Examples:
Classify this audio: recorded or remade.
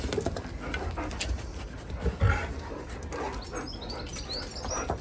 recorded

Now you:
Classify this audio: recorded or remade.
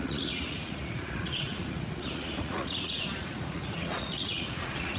remade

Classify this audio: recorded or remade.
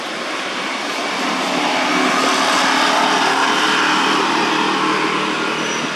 recorded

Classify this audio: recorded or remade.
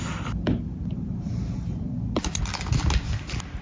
recorded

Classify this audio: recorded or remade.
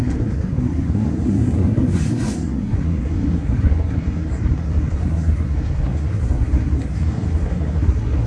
remade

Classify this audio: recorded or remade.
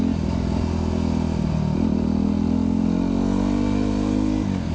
recorded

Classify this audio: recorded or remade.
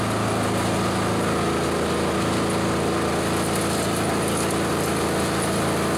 recorded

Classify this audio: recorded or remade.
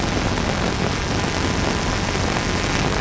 recorded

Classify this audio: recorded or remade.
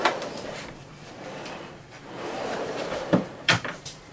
remade